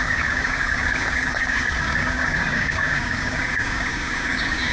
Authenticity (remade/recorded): remade